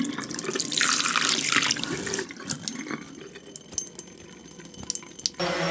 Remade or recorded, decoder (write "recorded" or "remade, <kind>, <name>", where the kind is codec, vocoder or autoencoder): recorded